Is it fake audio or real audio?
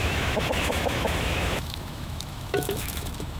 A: fake